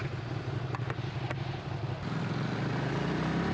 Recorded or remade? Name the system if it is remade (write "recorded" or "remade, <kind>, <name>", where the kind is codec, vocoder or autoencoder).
recorded